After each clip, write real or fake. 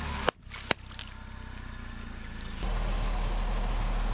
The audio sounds real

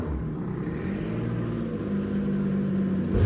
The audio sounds real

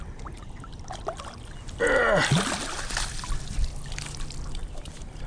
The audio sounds real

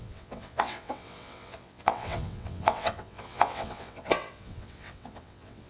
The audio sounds fake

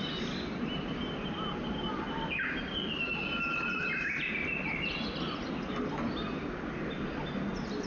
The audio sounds real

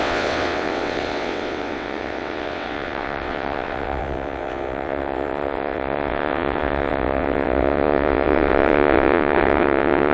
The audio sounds fake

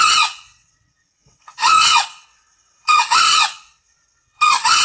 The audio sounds fake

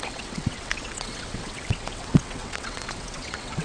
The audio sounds fake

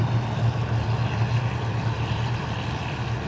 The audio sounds real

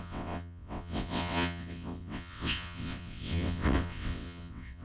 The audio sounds fake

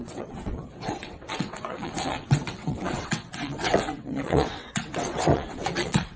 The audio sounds fake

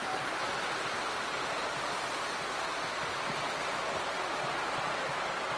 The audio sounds real